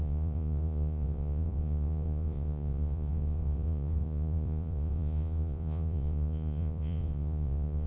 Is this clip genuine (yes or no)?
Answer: no